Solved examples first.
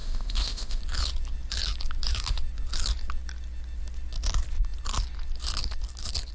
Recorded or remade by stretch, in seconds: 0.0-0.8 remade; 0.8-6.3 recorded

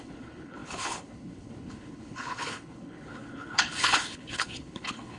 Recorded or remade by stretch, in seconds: 0.0-5.2 remade

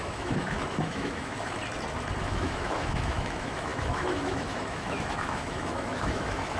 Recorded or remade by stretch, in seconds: 0.0-1.6 remade; 1.6-2.2 recorded; 2.2-6.6 remade

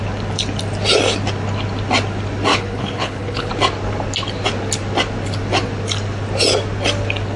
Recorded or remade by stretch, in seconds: 0.0-2.5 recorded; 2.5-3.5 remade; 3.5-7.4 recorded

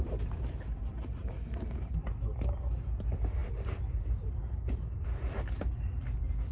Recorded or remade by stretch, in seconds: 0.0-6.5 recorded